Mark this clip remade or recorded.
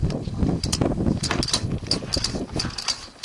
recorded